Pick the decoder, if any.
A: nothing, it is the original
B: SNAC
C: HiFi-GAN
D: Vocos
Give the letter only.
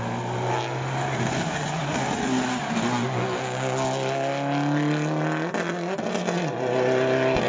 A